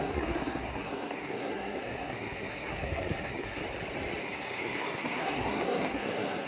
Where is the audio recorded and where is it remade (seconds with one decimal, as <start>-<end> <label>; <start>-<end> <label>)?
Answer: 0.0-3.6 remade; 3.6-4.2 recorded; 4.2-6.5 remade